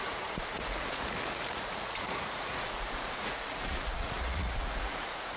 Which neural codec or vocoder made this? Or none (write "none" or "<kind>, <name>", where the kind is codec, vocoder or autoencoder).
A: vocoder, Vocos